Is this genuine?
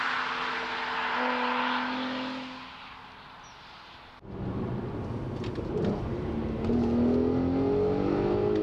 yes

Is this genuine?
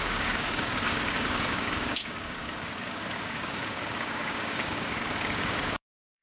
no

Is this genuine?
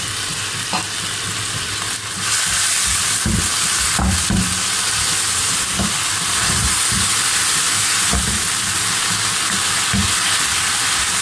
yes